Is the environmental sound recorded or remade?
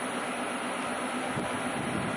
recorded